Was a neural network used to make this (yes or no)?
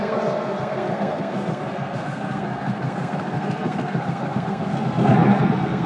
yes